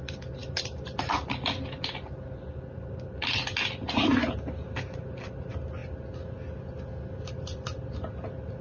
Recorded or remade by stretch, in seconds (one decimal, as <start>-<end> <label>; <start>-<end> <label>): 0.0-8.6 recorded